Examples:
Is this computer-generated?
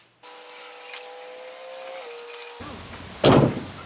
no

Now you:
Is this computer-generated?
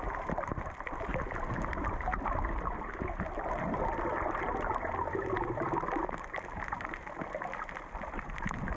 no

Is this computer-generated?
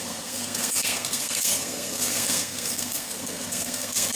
yes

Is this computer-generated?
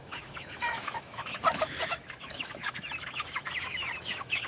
yes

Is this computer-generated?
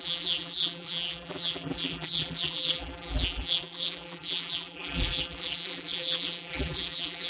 yes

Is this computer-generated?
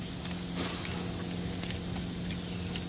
no